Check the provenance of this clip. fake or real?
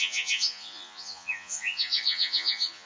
fake